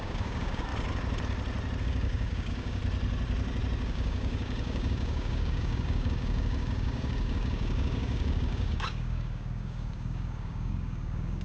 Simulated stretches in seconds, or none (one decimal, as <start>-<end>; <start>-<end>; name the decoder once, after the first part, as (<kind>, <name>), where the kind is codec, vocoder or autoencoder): 0.0-0.7 (codec, DAC); 1.8-2.8; 3.8-11.4